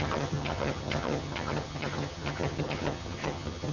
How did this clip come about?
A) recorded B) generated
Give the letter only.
B